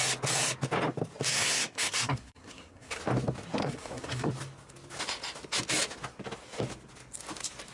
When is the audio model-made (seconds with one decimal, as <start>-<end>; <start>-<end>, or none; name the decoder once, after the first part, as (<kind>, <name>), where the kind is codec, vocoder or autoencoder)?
1.3-3.0 (codec, SNAC); 3.6-4.3